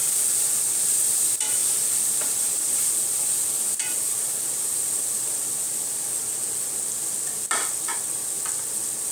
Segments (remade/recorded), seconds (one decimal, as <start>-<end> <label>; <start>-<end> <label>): 0.0-0.6 remade; 0.6-1.6 recorded; 1.6-2.9 remade; 2.9-3.8 recorded; 3.8-5.2 remade; 5.2-7.9 recorded; 7.9-8.4 remade; 8.4-9.1 recorded